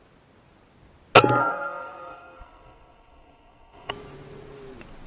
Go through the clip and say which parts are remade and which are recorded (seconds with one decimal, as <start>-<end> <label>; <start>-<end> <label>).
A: 0.0-1.4 recorded; 1.4-3.9 remade; 3.9-5.1 recorded